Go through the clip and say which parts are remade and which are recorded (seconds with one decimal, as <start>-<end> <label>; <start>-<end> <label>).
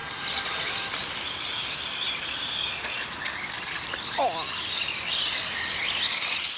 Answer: 0.0-6.6 recorded